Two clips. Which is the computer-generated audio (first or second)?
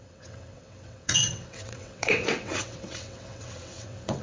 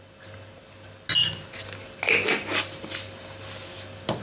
first